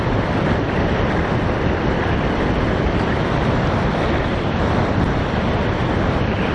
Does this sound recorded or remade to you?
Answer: remade